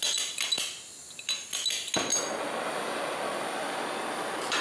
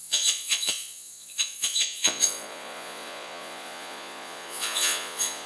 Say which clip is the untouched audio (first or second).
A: first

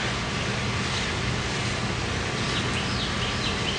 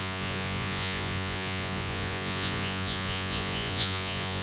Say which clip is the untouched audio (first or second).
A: first